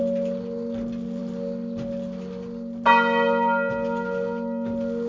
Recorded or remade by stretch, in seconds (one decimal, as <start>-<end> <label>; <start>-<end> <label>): 0.0-5.1 recorded